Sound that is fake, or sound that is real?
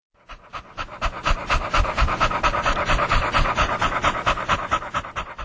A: real